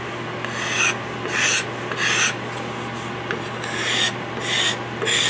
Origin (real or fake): real